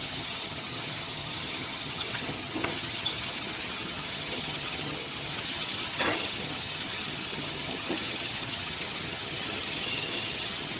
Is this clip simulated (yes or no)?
yes